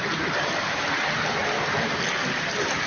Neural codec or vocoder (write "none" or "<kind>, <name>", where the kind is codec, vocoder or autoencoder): none